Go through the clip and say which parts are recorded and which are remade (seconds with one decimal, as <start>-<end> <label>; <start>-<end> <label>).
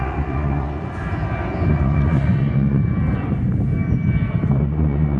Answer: 0.0-1.0 remade; 1.0-1.7 recorded; 1.7-2.8 remade; 2.8-4.5 recorded; 4.5-5.2 remade